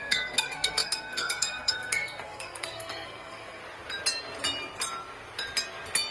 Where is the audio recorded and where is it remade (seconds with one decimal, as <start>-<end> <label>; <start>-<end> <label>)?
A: 0.0-3.6 remade; 3.6-6.1 recorded